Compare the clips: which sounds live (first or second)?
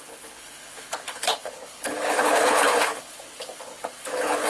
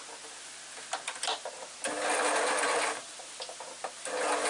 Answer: second